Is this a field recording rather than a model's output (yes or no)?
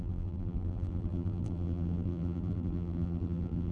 no